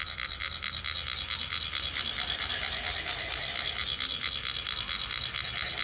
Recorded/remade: recorded